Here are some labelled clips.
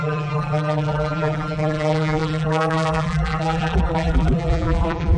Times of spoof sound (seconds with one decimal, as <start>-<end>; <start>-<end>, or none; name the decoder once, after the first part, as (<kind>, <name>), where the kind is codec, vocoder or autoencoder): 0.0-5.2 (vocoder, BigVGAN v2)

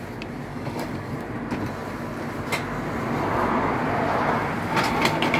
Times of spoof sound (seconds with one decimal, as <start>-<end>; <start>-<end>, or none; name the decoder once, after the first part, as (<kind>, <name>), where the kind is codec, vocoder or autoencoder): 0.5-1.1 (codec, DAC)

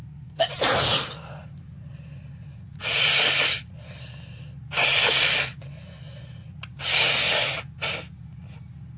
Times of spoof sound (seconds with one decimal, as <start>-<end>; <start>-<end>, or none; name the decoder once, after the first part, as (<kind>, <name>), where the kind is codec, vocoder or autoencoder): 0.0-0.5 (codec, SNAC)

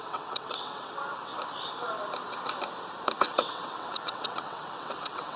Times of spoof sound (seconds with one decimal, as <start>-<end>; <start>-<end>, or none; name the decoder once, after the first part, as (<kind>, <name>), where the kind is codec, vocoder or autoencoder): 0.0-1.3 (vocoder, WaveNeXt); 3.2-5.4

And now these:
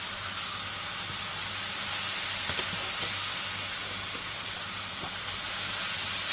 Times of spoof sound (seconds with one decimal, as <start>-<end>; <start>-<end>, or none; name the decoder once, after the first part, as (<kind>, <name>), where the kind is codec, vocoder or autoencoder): none